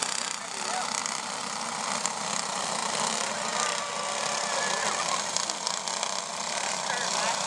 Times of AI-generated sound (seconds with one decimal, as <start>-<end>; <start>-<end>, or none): none